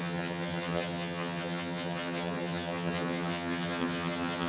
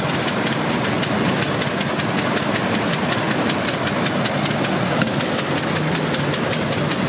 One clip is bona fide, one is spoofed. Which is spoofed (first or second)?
first